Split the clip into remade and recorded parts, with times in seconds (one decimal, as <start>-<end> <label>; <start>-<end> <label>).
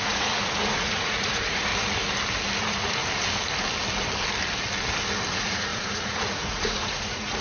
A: 0.0-1.7 remade; 1.7-2.6 recorded; 2.6-3.0 remade; 3.0-5.3 recorded; 5.3-7.4 remade